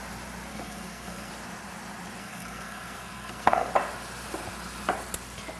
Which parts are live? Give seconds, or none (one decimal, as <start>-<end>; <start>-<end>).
0.0-0.5; 1.3-2.2; 3.7-5.6